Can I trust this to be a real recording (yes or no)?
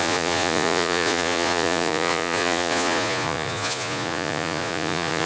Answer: no